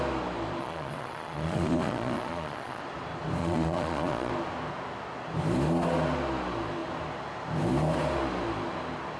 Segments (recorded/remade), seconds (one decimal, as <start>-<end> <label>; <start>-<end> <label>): 0.0-0.6 recorded; 0.6-2.8 remade; 2.8-3.4 recorded; 3.4-4.3 remade; 4.3-9.2 recorded

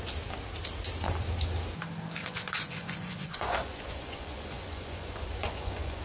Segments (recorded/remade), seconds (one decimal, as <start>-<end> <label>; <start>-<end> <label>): 0.0-2.2 recorded; 2.2-6.0 remade

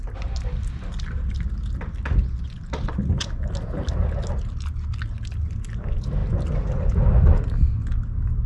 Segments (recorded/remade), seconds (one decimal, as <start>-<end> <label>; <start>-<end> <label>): 0.0-8.5 recorded

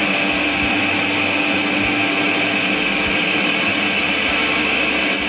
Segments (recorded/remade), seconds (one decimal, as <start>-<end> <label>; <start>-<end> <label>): 0.0-5.3 recorded

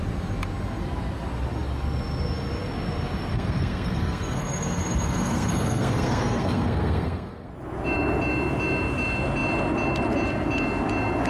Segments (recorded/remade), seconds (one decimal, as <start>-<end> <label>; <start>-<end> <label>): 0.0-3.3 recorded; 3.3-7.5 remade; 7.5-11.3 recorded

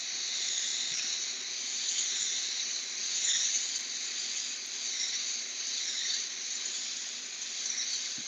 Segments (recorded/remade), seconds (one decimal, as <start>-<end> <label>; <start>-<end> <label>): 0.0-8.3 recorded

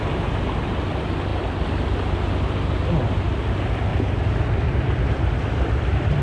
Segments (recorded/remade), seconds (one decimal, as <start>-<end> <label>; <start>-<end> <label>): 0.0-1.3 recorded; 1.3-1.9 remade; 1.9-3.9 recorded; 3.9-6.2 remade